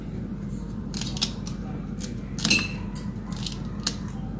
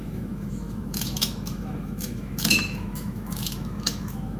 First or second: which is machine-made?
second